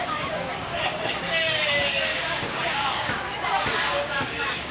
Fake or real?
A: fake